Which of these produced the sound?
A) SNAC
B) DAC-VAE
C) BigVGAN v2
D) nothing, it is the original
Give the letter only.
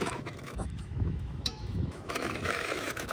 B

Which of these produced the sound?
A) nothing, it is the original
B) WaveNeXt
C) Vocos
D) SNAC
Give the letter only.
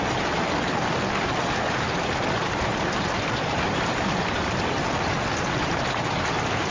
A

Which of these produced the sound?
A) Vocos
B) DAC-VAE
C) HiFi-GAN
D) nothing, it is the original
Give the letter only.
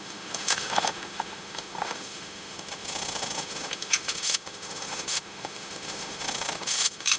B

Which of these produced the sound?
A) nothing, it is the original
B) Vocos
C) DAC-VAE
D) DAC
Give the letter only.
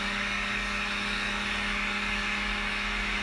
D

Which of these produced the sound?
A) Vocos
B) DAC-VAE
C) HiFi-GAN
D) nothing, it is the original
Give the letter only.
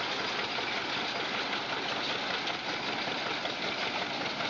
D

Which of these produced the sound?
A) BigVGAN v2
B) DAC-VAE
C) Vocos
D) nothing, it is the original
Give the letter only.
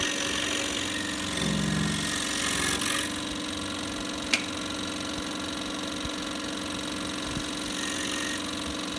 D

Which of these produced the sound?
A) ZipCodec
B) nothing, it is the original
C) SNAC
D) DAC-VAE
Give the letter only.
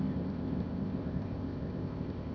A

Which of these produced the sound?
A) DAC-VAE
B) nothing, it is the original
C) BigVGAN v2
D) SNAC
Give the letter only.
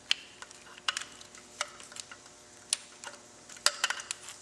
B